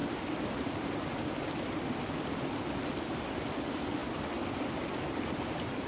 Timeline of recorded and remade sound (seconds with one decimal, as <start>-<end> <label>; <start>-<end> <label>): 0.0-5.9 recorded